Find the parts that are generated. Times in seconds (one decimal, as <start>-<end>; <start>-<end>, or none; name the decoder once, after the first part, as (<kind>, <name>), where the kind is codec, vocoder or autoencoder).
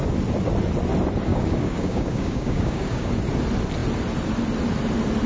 1.3-3.1 (codec, DAC)